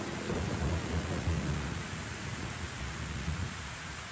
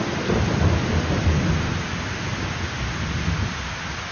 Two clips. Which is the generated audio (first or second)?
first